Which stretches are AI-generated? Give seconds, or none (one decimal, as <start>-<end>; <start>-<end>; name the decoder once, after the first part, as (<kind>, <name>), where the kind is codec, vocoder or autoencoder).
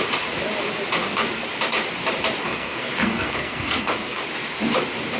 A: 2.4-4.2 (codec, SNAC)